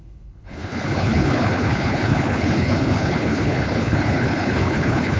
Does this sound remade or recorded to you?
remade